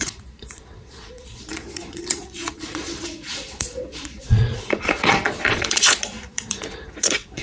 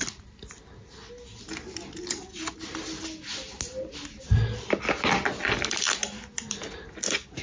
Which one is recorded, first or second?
second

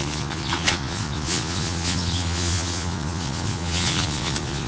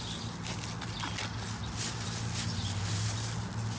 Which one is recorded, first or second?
second